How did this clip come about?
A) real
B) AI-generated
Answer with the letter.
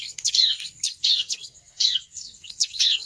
B